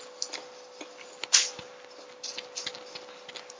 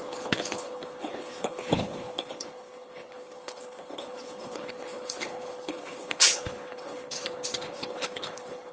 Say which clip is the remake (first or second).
second